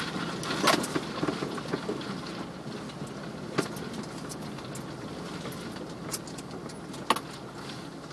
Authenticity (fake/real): real